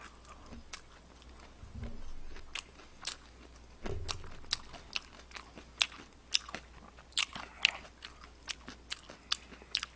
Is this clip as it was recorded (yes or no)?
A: yes